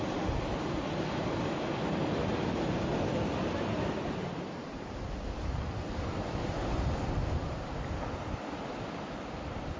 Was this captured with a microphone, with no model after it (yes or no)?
yes